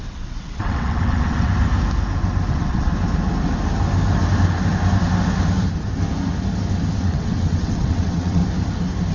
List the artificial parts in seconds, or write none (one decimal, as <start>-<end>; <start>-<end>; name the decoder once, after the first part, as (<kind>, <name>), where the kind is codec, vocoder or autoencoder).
0.0-1.5 (vocoder, WaveNeXt); 2.5-2.9; 7.0-8.4